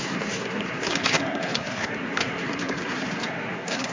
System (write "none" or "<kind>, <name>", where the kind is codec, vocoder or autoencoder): codec, SNAC